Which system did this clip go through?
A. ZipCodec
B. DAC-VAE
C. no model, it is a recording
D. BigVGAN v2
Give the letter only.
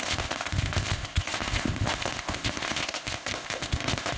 A